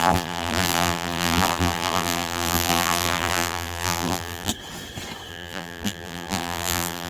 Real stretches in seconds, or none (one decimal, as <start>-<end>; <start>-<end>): 4.5-5.3